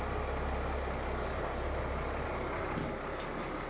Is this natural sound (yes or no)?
yes